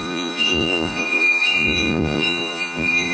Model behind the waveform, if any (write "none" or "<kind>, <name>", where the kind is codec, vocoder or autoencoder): vocoder, Vocos